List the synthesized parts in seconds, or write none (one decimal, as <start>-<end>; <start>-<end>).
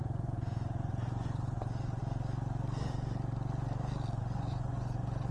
0.0-2.0; 4.2-5.3